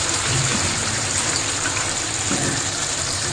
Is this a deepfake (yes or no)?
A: yes